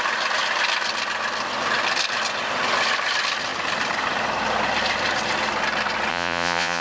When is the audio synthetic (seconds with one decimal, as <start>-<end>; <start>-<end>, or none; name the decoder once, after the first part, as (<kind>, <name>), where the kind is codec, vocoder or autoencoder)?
6.1-6.8 (vocoder, Vocos)